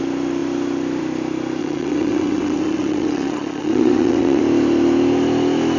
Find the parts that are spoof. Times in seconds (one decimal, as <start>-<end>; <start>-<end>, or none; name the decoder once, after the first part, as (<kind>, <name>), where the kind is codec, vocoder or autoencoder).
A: 1.6-4.4 (vocoder, WaveNeXt)